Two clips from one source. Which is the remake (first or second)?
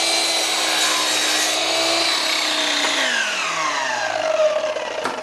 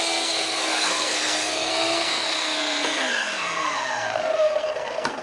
second